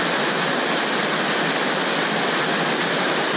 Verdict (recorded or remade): recorded